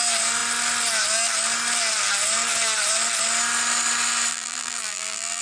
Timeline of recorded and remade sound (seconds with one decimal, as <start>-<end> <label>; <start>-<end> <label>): 0.0-4.3 recorded; 4.3-5.4 remade